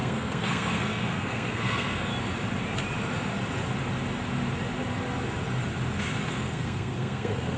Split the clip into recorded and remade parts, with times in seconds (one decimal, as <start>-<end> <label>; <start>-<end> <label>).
0.0-2.1 remade; 2.1-6.3 recorded; 6.3-7.6 remade